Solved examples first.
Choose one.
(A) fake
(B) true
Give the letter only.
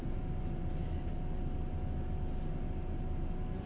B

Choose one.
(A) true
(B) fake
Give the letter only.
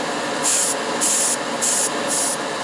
A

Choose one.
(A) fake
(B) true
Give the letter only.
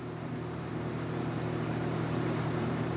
A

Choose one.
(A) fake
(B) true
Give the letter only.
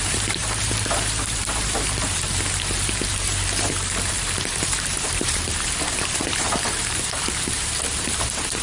A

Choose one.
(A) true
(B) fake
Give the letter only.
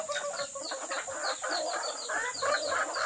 A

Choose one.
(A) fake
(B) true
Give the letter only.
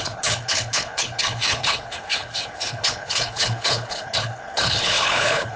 A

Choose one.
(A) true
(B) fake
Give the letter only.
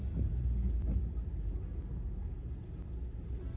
A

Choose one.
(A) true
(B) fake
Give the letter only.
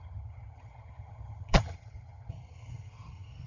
B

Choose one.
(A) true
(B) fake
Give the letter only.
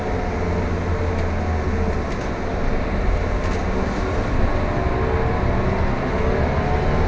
A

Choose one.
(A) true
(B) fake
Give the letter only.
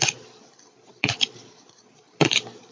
B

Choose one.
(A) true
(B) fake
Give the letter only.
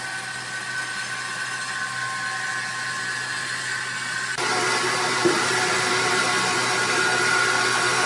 A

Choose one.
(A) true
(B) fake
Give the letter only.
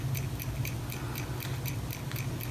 A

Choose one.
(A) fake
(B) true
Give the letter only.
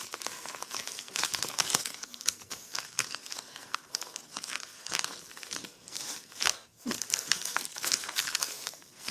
A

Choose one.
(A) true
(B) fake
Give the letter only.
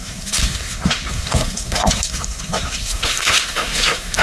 B